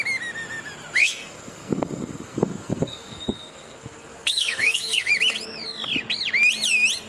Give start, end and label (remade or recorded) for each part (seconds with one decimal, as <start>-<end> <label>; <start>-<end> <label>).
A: 0.0-1.0 recorded; 1.0-5.1 remade; 5.1-7.1 recorded